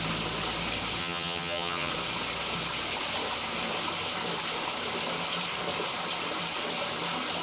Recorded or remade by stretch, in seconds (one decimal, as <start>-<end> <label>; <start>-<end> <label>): 0.0-1.0 recorded; 1.0-1.9 remade; 1.9-7.4 recorded